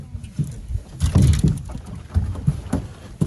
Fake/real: real